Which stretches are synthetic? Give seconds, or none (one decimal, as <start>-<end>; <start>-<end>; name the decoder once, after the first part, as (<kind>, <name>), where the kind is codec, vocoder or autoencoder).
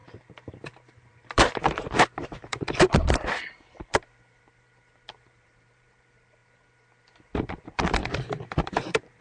0.0-6.4 (vocoder, BigVGAN v2); 7.5-8.0; 8.6-9.2